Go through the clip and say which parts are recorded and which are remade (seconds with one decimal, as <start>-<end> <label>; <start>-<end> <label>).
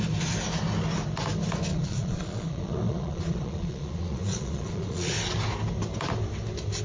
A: 0.0-1.7 recorded; 1.7-5.1 remade; 5.1-6.8 recorded